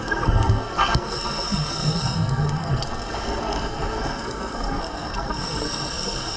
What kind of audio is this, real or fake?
fake